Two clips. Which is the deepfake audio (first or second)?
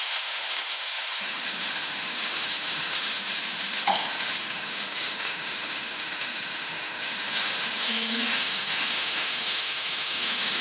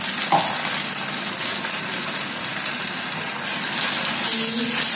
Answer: first